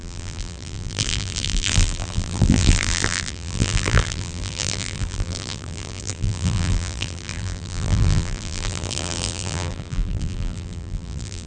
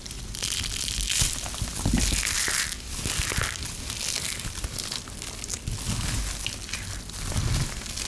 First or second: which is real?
second